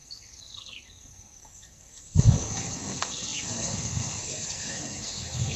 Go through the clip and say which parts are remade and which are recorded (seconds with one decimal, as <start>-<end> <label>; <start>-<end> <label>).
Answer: 0.0-5.6 remade